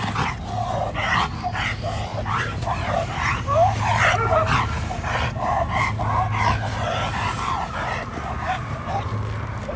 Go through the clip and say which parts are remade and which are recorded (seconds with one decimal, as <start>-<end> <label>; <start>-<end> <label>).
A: 0.0-9.8 recorded

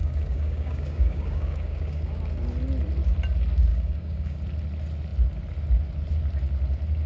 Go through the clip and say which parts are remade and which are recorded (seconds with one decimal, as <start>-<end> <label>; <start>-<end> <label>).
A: 0.0-2.2 remade; 2.2-3.7 recorded; 3.7-4.4 remade; 4.4-7.1 recorded